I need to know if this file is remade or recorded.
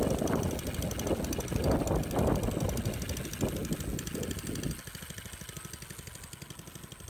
recorded